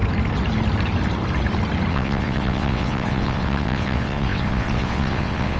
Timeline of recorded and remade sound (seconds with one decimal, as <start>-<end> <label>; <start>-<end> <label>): 0.0-1.9 recorded; 1.9-5.6 remade